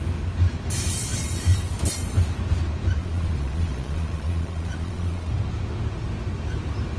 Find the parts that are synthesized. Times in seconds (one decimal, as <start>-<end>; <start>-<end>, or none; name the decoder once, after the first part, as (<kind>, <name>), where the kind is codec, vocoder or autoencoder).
3.0-5.3 (vocoder, Vocos)